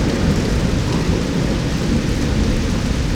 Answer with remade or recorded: recorded